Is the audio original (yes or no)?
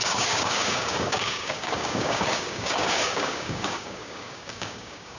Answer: no